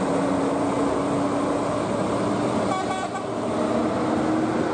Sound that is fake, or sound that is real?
real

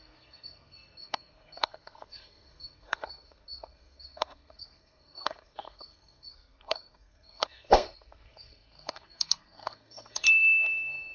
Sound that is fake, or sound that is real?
fake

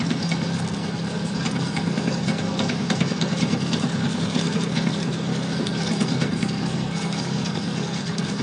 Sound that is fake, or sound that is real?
fake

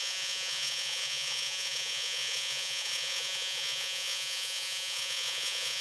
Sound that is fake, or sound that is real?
fake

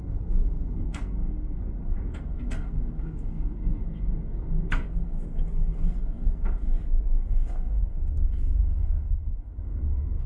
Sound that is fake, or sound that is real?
fake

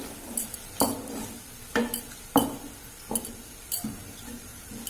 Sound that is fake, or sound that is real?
real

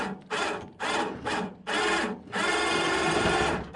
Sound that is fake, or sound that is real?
real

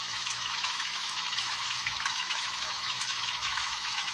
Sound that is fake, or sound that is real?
fake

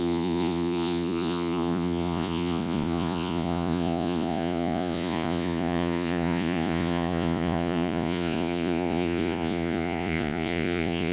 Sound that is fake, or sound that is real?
fake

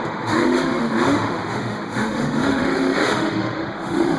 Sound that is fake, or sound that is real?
fake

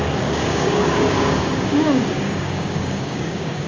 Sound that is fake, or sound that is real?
fake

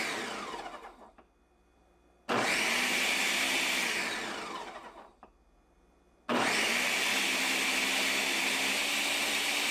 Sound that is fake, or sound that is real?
real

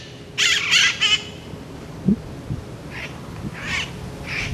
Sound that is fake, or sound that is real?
real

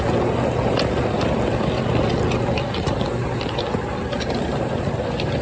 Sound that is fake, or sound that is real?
real